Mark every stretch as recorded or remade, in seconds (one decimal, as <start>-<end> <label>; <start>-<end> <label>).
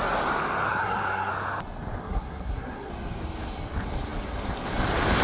0.0-0.7 recorded; 0.7-1.3 remade; 1.3-2.0 recorded; 2.0-2.9 remade; 2.9-5.2 recorded